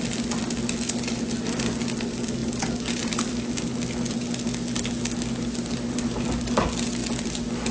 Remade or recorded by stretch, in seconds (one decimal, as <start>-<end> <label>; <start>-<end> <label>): 0.0-7.7 recorded